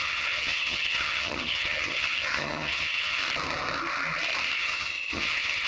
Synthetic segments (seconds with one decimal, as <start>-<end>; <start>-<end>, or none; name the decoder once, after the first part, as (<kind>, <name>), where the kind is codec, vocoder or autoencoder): 0.0-3.2 (vocoder, HiFi-GAN); 4.6-5.7